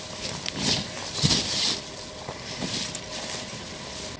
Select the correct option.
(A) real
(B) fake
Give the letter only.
A